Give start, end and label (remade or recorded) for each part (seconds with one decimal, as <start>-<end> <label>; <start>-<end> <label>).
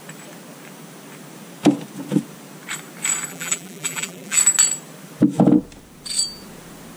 0.0-3.3 recorded; 3.3-4.4 remade; 4.4-7.0 recorded